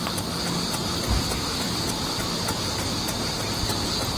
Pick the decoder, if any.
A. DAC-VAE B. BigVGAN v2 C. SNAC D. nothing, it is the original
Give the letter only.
D